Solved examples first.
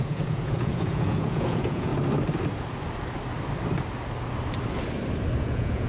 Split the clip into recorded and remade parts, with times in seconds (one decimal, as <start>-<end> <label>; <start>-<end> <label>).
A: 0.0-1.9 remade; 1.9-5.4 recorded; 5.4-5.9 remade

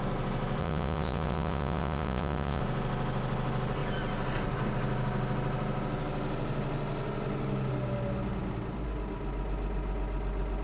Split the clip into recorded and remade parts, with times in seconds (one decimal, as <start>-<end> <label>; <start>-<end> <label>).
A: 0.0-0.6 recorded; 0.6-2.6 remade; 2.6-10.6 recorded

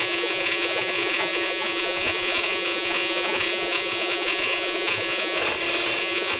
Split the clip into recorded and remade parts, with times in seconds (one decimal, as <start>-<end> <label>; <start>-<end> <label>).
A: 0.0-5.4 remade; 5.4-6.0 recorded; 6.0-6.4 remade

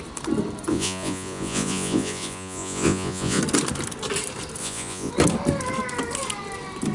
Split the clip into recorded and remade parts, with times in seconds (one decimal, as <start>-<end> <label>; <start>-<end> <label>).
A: 0.0-0.7 recorded; 0.7-3.4 remade; 3.4-4.6 recorded; 4.6-5.1 remade; 5.1-6.9 recorded